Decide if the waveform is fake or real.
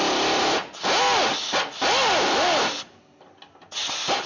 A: real